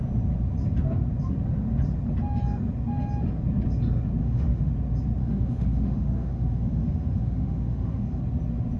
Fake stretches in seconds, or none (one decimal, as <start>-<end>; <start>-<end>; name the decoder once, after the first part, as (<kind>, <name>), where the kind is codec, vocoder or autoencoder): 4.2-4.7 (autoencoder, DAC-VAE); 5.2-8.2